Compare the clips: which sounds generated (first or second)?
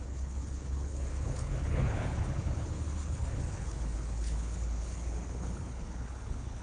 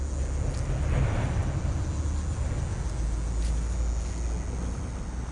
first